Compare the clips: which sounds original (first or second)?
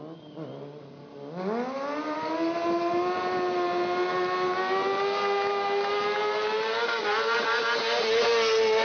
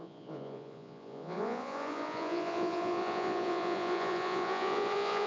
first